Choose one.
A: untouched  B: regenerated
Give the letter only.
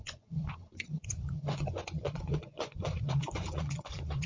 B